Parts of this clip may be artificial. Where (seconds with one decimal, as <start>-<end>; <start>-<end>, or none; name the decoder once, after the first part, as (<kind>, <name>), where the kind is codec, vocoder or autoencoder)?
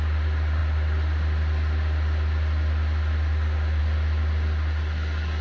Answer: none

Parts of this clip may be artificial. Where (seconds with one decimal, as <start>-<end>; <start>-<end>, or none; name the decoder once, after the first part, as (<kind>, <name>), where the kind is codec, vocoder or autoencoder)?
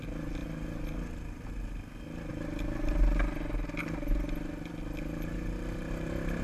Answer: none